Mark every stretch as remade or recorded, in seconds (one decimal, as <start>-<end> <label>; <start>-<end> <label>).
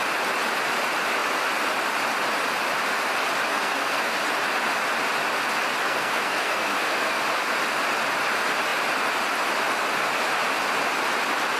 0.0-3.5 recorded; 3.5-4.2 remade; 4.2-5.8 recorded; 5.8-7.2 remade; 7.2-11.6 recorded